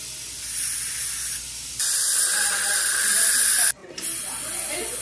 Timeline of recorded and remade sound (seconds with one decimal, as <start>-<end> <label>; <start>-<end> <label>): 0.0-1.0 recorded; 1.0-2.1 remade; 2.1-3.8 recorded; 3.8-4.4 remade; 4.4-5.0 recorded